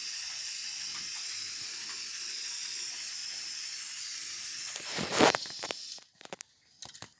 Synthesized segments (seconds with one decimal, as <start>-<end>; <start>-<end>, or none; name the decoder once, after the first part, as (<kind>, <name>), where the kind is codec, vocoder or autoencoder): none